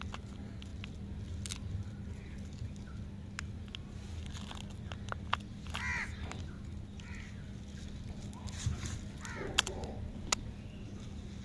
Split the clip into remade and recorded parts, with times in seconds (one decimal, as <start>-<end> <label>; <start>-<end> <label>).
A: 0.0-11.4 recorded